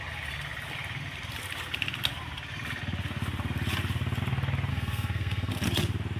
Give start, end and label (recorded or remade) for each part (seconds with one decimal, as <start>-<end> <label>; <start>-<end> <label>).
0.0-4.7 recorded; 4.7-5.5 remade; 5.5-6.2 recorded